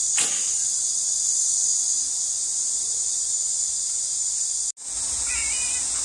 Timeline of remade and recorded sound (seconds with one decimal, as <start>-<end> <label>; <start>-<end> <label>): 0.0-6.0 recorded